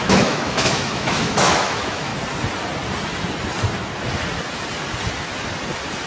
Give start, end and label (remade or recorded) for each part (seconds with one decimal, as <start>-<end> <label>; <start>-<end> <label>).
0.0-2.1 remade; 2.1-6.1 recorded